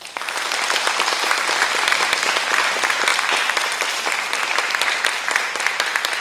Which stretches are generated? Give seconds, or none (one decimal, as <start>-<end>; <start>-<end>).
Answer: 3.1-4.8